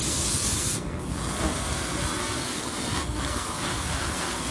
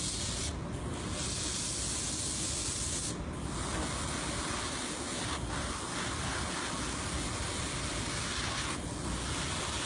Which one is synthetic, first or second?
first